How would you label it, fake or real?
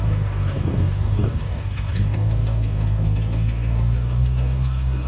fake